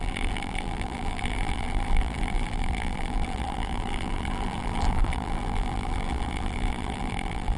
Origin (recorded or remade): remade